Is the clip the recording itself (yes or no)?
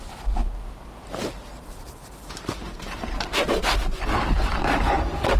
no